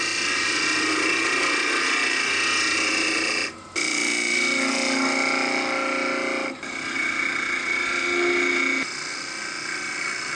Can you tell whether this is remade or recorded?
recorded